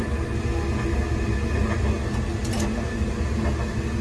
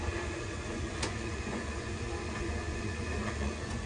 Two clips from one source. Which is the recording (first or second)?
first